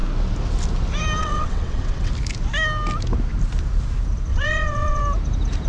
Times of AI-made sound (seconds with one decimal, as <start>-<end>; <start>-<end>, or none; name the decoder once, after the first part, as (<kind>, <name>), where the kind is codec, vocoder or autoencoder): 1.2-2.1 (vocoder, WaveNeXt); 4.3-5.0